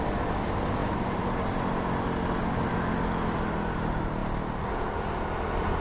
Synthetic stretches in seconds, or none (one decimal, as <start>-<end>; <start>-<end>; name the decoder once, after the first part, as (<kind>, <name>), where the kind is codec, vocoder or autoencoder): none